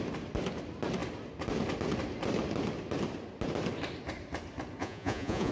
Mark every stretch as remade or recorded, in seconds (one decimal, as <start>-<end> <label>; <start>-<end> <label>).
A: 0.0-4.8 recorded; 4.8-5.5 remade